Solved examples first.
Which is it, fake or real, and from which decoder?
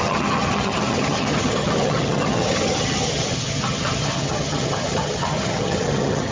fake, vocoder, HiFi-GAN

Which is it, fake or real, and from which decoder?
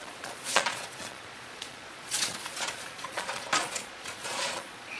fake, vocoder, Vocos